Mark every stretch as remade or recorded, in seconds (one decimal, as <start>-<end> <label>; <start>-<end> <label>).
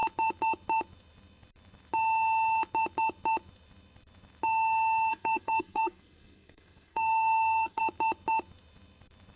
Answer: 0.0-5.1 recorded; 5.1-7.8 remade; 7.8-9.4 recorded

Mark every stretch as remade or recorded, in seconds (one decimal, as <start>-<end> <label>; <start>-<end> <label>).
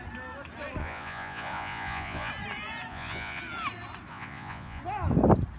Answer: 0.0-0.8 recorded; 0.8-2.3 remade; 2.3-2.9 recorded; 2.9-3.4 remade; 3.4-4.1 recorded; 4.1-4.8 remade; 4.8-5.6 recorded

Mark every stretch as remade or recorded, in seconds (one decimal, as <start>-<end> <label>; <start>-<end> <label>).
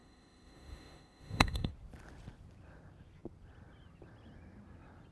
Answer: 0.0-1.7 remade; 1.7-5.1 recorded